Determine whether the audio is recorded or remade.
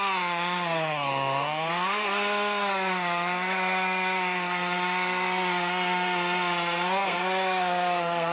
remade